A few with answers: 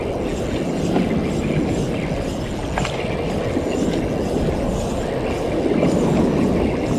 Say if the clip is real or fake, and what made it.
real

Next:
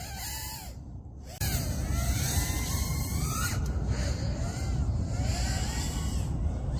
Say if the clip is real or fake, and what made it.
fake, vocoder, BigVGAN v2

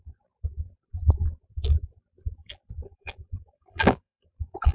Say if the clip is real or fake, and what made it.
fake, vocoder, BigVGAN v2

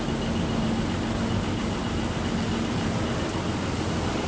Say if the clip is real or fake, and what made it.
real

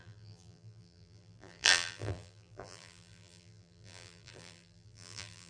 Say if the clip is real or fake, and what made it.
fake, vocoder, BigVGAN v2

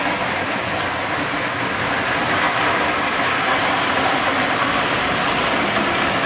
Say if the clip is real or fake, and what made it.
real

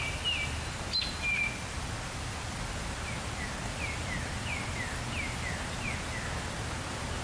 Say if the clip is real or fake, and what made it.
real